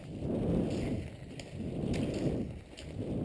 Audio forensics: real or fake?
real